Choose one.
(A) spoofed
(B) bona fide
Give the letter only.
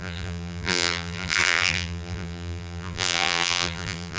A